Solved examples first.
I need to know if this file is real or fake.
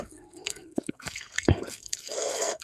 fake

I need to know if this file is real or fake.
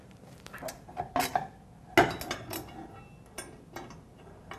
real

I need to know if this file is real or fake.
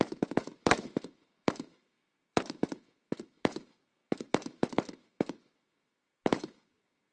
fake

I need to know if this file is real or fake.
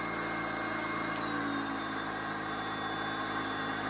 real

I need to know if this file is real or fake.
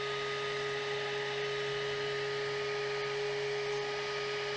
real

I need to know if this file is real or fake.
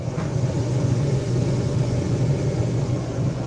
fake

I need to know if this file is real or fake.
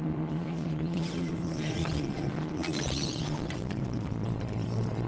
fake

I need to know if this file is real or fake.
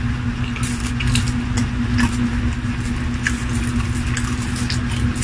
real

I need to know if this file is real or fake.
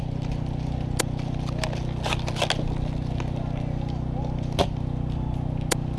real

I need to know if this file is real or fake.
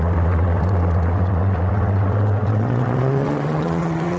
fake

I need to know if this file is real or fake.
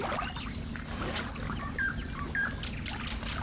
real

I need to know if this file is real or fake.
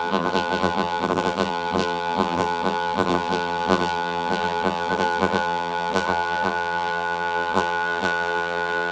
fake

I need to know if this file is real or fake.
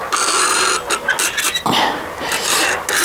real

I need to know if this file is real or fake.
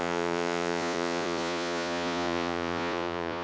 fake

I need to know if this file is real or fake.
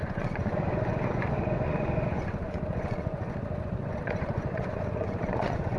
fake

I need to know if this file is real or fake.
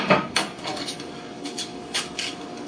fake